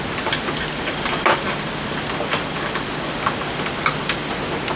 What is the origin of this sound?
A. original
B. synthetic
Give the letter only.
A